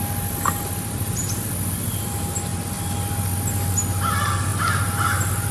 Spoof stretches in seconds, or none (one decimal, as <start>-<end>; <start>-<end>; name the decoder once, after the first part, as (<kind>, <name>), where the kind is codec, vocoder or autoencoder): none